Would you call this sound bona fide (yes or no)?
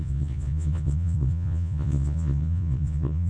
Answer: no